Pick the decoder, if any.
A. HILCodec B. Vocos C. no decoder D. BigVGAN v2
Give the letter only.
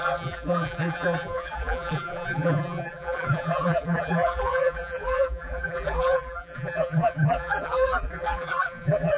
D